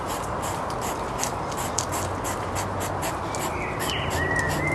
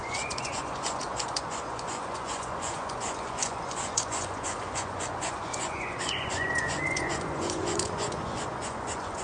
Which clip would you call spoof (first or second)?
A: second